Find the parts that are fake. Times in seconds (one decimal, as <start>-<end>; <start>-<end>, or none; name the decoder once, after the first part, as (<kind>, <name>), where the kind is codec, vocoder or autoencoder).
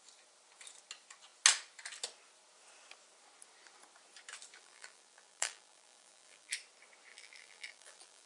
4.6-6.5 (vocoder, BigVGAN v2); 7.1-8.3